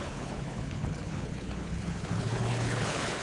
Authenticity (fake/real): fake